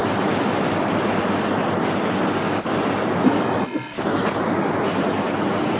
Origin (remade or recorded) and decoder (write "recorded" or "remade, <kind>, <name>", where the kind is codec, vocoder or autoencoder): recorded